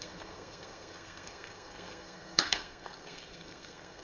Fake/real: fake